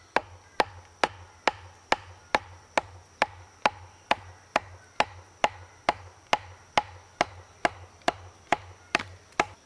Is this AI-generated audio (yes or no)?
no